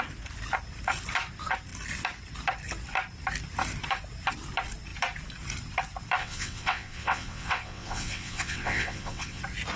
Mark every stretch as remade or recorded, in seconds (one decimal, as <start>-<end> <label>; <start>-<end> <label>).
0.0-6.2 recorded; 6.2-9.4 remade; 9.4-9.8 recorded